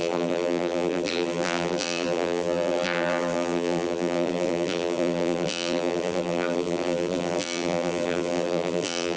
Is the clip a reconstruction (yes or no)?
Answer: yes